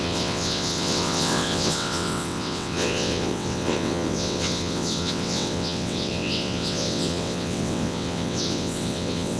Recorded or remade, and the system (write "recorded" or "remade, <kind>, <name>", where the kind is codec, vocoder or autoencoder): remade, vocoder, WaveNeXt